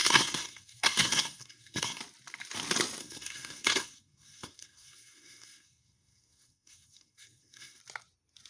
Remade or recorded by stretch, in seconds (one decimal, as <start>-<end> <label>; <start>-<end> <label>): 0.0-2.0 remade; 2.0-3.0 recorded; 3.0-7.8 remade; 7.8-8.5 recorded